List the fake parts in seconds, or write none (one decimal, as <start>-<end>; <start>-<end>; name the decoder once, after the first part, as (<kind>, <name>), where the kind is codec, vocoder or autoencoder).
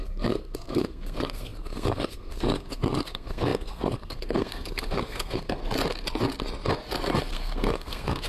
0.0-5.6 (codec, SNAC); 7.3-8.3